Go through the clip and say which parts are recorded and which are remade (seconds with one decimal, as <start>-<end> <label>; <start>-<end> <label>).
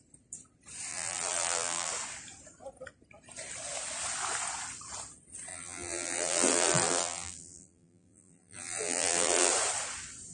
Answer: 0.0-0.9 recorded; 0.9-1.9 remade; 1.9-5.5 recorded; 5.5-9.5 remade; 9.5-10.3 recorded